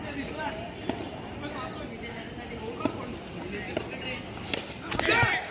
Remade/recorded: recorded